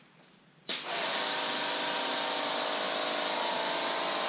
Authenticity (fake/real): real